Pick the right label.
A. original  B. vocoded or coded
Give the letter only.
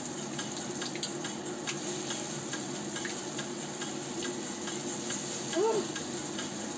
A